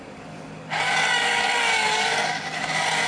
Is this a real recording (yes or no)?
no